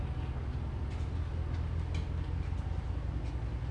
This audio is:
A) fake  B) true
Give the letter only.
B